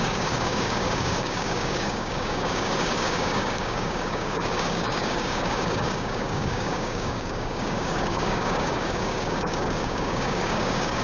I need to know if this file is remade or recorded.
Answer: remade